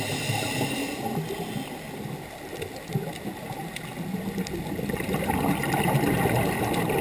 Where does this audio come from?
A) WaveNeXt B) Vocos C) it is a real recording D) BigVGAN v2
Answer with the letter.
C